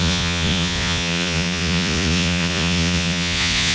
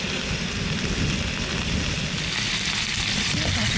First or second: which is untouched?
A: second